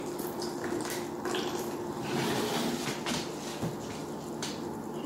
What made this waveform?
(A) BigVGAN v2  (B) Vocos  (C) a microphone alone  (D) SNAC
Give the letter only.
C